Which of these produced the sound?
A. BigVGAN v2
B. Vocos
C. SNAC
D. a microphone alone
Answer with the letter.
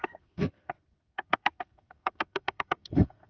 C